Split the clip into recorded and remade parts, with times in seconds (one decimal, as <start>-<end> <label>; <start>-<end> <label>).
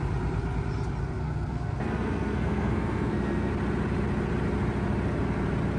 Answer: 0.0-1.0 recorded; 1.0-3.5 remade; 3.5-5.8 recorded